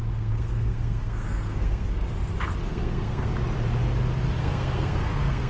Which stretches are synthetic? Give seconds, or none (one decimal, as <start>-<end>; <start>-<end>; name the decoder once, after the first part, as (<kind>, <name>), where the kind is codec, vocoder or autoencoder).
0.0-2.1 (codec, SNAC); 2.7-3.3; 4.4-5.5